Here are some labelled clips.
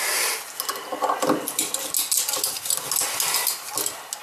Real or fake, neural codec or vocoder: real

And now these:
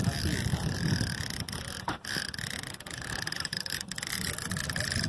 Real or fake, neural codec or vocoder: real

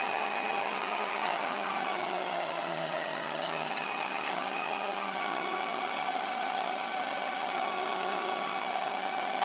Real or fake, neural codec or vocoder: fake, vocoder, HiFi-GAN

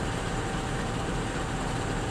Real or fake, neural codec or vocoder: fake, vocoder, BigVGAN v2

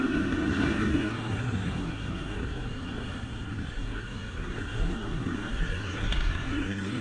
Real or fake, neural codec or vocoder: fake, codec, SNAC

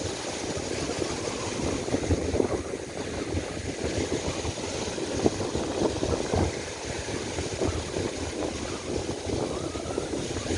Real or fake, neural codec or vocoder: real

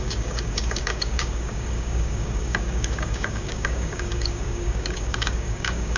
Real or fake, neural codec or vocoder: fake, codec, DAC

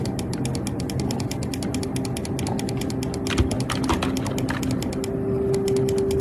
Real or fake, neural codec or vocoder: real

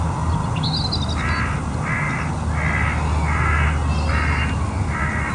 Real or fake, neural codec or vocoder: real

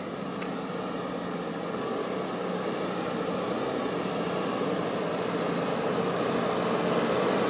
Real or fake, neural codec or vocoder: real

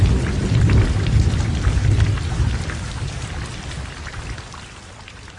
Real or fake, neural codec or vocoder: real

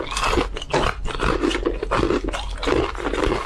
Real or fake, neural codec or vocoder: real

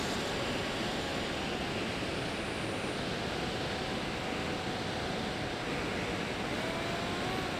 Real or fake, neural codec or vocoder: real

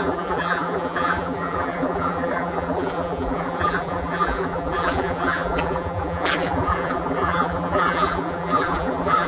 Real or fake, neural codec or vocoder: fake, vocoder, BigVGAN v2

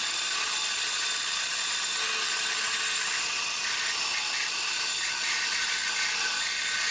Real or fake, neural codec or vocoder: real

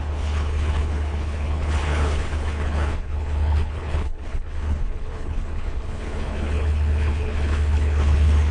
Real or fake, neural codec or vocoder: fake, codec, HILCodec